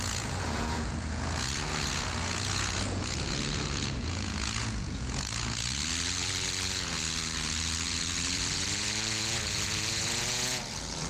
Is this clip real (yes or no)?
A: no